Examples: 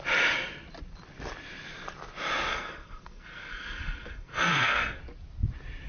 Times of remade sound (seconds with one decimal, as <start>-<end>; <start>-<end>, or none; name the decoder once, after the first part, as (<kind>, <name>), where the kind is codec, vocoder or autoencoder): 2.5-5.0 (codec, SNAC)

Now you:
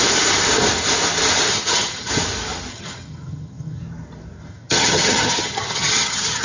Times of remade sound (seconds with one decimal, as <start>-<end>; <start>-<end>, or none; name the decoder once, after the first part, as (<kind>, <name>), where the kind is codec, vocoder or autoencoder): 1.5-2.1 (vocoder, HiFi-GAN); 2.7-3.8; 4.5-6.4

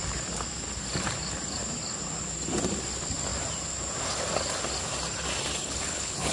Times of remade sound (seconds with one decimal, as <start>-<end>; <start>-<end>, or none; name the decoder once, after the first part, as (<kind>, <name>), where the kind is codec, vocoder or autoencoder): 5.6-6.3 (codec, HILCodec)